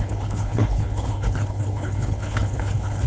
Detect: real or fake fake